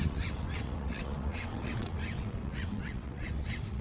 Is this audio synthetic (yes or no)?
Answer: yes